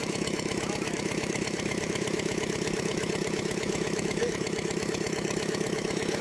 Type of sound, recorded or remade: remade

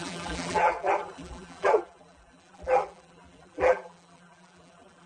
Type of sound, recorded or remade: remade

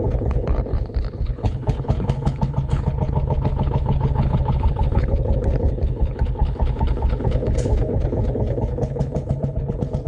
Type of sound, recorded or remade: remade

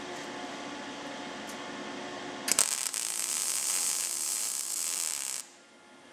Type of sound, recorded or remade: recorded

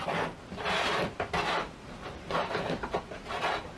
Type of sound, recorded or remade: recorded